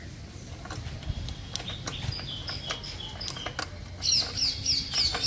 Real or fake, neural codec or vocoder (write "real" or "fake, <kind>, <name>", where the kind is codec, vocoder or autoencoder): real